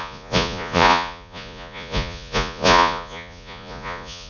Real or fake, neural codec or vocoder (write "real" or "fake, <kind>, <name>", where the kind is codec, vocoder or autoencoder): fake, vocoder, Vocos